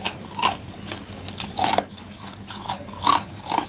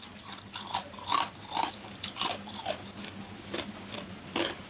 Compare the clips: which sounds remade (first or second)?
first